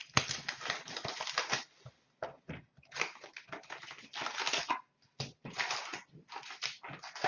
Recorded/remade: recorded